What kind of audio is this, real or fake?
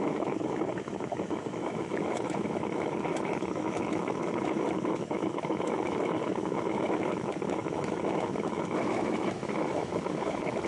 fake